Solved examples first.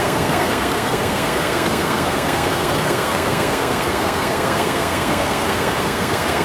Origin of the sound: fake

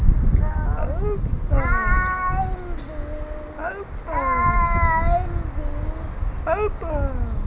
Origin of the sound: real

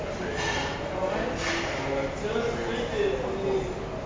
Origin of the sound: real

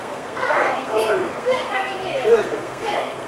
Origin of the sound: fake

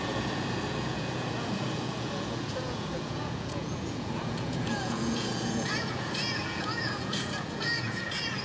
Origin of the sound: fake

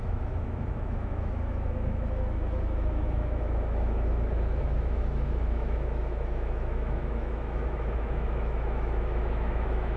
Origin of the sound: fake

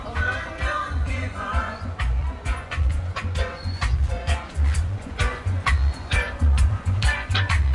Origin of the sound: fake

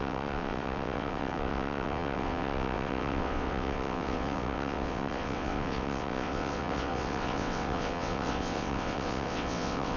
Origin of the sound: fake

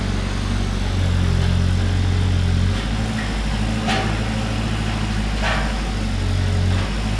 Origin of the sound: real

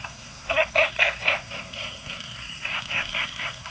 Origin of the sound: fake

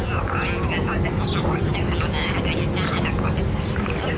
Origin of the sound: real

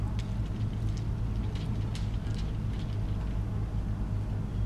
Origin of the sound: real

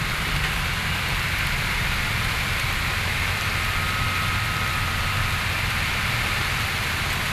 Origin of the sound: fake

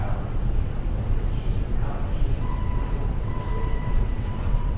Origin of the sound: fake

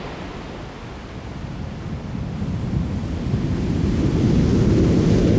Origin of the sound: real